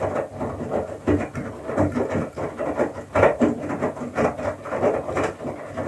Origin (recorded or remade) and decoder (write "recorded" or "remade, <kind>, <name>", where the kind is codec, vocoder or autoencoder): recorded